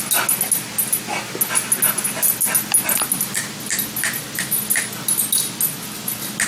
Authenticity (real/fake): real